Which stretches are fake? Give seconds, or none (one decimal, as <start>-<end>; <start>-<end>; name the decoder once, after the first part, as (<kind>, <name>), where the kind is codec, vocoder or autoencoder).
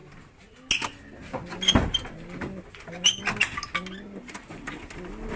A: none